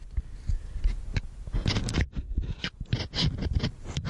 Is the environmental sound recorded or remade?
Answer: recorded